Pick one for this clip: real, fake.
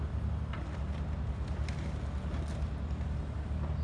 real